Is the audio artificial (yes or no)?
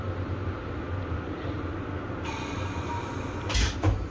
yes